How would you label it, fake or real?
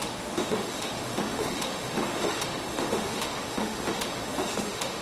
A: fake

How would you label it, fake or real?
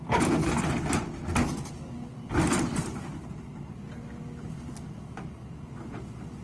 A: real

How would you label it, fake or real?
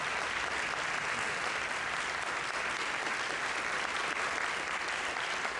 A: real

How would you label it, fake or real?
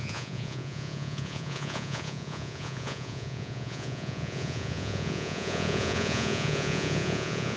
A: fake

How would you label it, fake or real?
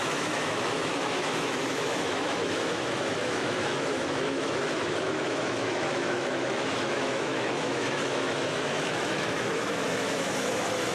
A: fake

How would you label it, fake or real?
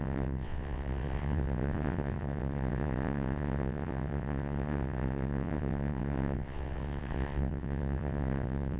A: fake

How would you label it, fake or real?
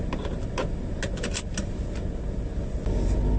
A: real